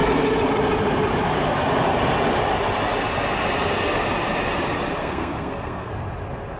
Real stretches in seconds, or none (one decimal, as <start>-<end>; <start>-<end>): 0.0-5.0; 5.9-6.6